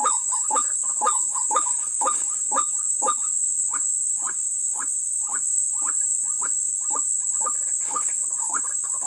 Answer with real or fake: fake